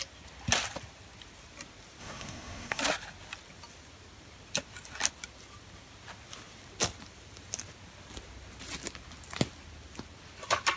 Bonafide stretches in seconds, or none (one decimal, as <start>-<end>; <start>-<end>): 0.0-2.0; 2.8-10.8